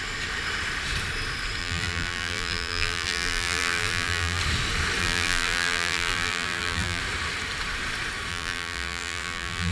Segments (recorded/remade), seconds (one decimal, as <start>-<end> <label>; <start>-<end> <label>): 0.0-1.6 recorded; 1.6-4.4 remade; 4.4-5.0 recorded; 5.0-7.0 remade; 7.0-8.3 recorded; 8.3-9.7 remade

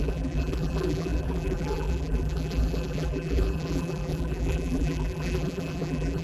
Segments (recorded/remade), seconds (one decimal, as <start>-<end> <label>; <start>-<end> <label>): 0.0-6.2 remade

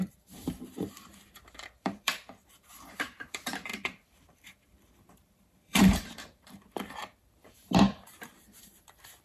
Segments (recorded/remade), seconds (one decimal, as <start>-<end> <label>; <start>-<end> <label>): 0.0-9.2 remade

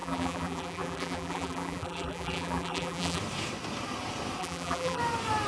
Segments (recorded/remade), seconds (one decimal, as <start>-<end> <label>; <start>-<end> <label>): 0.0-3.2 remade; 3.2-4.4 recorded; 4.4-5.0 remade; 5.0-5.5 recorded

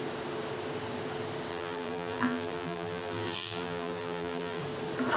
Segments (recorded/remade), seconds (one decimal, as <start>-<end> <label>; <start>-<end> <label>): 0.0-1.5 recorded; 1.5-4.6 remade; 4.6-5.2 recorded